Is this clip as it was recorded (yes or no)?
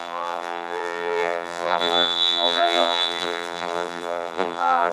no